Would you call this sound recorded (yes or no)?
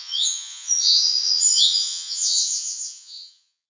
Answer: no